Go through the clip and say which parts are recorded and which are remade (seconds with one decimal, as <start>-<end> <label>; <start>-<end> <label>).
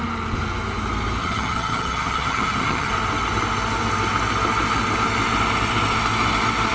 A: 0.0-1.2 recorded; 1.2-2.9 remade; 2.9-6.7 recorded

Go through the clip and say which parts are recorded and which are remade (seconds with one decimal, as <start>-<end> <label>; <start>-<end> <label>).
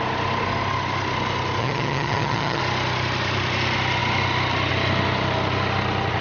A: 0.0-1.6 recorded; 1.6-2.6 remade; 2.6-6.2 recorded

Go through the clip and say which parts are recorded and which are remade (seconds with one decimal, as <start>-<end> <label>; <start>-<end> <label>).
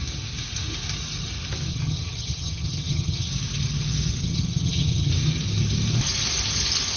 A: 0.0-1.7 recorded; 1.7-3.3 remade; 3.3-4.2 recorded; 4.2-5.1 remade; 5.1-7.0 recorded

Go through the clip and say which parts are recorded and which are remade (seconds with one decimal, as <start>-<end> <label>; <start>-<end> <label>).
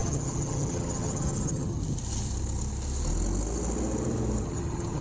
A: 0.0-1.8 remade; 1.8-4.4 recorded; 4.4-5.0 remade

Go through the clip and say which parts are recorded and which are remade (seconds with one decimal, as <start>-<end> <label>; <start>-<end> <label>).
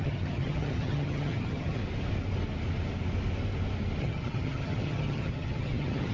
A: 0.0-1.8 remade; 1.8-4.0 recorded; 4.0-6.1 remade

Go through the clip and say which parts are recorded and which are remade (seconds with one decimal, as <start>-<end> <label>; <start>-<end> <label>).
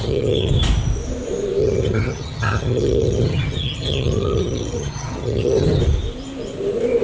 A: 0.0-0.5 remade; 0.5-1.6 recorded; 1.6-5.8 remade; 5.8-7.0 recorded